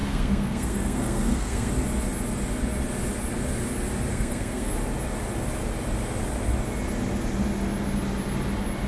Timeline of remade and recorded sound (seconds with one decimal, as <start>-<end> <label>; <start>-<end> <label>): 0.0-1.7 remade; 1.7-4.1 recorded; 4.1-4.7 remade; 4.7-8.9 recorded